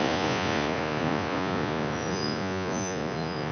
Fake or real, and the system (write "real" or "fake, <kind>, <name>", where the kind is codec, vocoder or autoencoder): fake, vocoder, Vocos